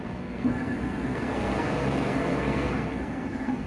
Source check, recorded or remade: remade